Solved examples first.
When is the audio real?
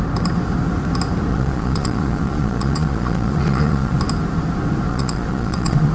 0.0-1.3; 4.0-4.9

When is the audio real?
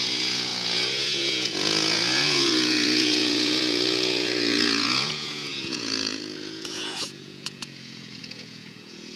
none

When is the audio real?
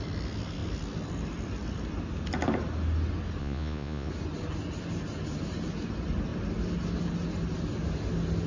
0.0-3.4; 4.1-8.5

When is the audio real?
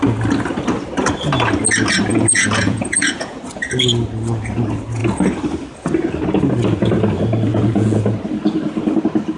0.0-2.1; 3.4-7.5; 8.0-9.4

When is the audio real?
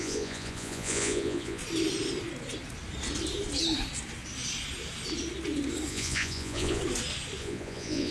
1.6-5.9; 6.8-7.4